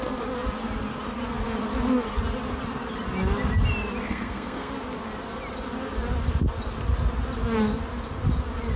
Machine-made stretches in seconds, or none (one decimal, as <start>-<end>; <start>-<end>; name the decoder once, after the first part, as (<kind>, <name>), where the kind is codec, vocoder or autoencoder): 4.0-4.7 (codec, SNAC)